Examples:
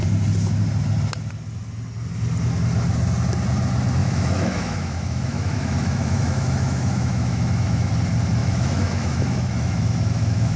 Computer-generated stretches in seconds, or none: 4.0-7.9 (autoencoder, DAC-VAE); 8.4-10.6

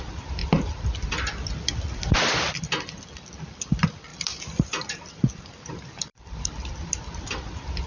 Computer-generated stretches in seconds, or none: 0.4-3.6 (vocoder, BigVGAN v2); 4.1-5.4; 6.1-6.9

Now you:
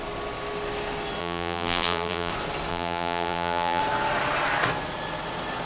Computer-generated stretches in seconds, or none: 1.2-2.3 (vocoder, BigVGAN v2); 2.7-3.8

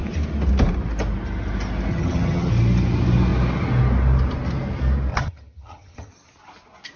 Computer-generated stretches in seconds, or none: 1.9-2.5 (vocoder, HiFi-GAN); 5.1-6.1

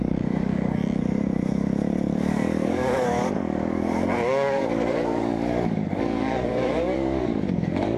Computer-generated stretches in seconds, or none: 0.0-0.8 (codec, DAC); 2.3-8.0